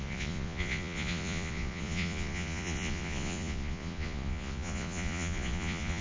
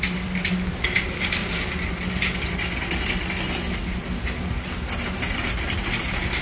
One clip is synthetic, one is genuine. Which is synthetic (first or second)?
first